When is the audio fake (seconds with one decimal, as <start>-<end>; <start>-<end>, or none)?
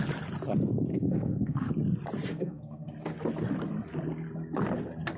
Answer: 0.9-1.7; 2.3-2.9